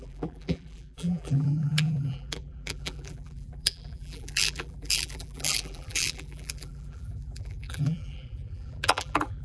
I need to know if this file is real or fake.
fake